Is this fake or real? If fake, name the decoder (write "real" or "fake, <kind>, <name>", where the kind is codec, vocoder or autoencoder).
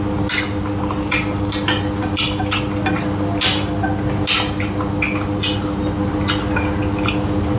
real